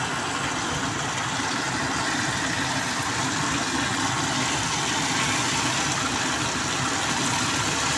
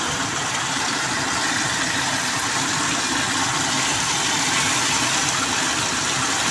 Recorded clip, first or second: first